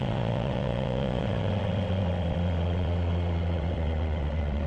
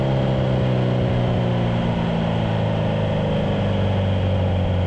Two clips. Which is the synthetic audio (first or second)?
first